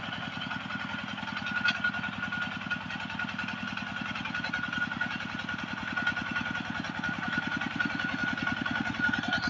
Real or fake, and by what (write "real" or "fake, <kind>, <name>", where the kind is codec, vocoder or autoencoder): real